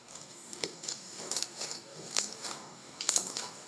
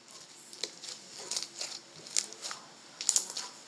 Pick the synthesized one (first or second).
first